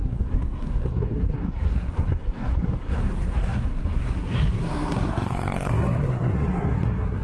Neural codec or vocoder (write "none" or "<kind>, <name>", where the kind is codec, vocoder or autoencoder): codec, SNAC